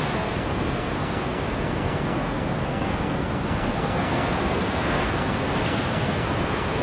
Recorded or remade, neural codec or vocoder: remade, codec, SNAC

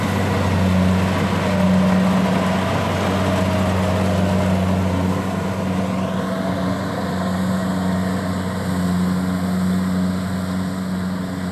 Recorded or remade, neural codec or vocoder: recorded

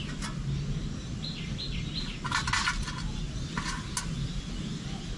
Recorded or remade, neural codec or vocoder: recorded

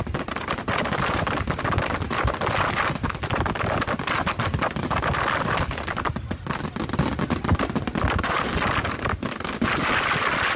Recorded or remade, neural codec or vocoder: recorded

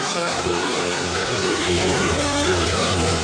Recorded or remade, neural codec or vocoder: remade, codec, SNAC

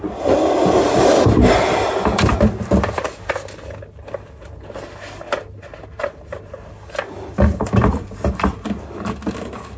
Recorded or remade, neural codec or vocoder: recorded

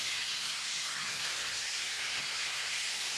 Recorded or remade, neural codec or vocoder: remade, codec, SNAC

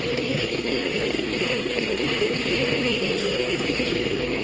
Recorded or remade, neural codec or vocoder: remade, codec, SNAC